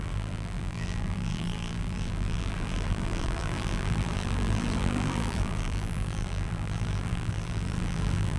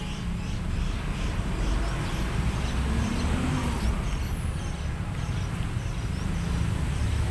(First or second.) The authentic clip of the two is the second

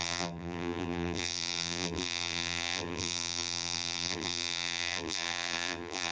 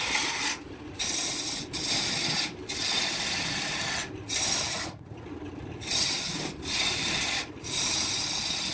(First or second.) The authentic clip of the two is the second